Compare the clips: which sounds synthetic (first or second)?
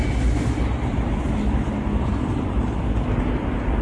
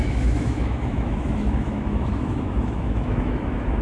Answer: second